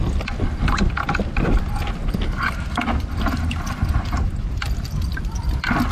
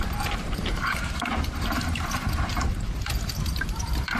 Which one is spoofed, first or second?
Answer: second